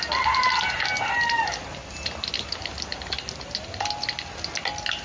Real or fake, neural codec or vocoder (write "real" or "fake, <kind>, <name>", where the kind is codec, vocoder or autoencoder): real